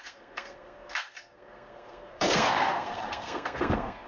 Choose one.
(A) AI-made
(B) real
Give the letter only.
A